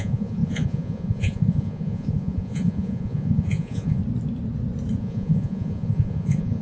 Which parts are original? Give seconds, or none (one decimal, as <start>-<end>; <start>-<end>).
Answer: 4.0-5.0